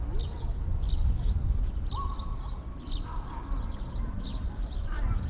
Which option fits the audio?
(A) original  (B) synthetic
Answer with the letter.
A